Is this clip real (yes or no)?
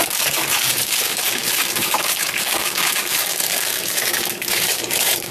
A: no